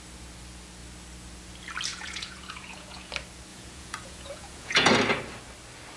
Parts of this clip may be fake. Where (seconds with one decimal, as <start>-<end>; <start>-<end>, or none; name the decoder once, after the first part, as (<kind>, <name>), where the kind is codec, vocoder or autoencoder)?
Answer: 1.9-3.1 (vocoder, Vocos); 3.5-4.9